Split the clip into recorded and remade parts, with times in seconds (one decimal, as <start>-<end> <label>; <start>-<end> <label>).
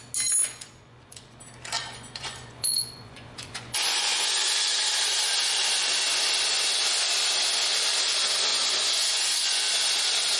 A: 0.0-0.4 recorded; 0.4-1.4 remade; 1.4-1.8 recorded; 1.8-4.9 remade; 4.9-8.5 recorded; 8.5-9.7 remade; 9.7-10.4 recorded